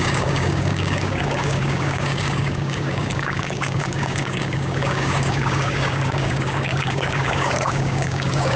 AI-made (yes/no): yes